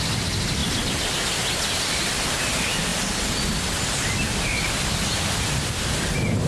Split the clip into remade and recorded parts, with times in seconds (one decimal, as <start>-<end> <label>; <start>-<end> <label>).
0.0-6.5 recorded